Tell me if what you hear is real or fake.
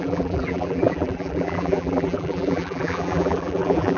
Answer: fake